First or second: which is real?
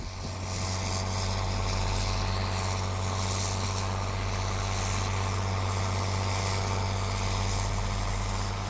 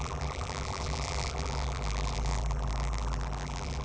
first